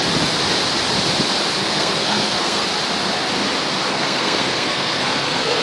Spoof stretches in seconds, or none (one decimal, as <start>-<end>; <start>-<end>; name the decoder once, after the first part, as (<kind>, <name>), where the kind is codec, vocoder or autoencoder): 1.6-2.6 (codec, SNAC); 3.9-5.6